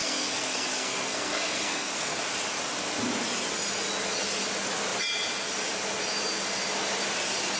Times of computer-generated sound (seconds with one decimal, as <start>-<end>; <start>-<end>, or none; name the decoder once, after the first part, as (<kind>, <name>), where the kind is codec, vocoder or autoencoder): 0.0-2.2 (codec, SNAC)